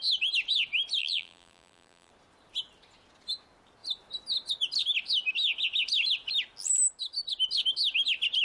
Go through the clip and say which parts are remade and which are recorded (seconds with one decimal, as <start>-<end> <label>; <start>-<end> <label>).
0.0-1.0 recorded; 1.0-2.1 remade; 2.1-8.4 recorded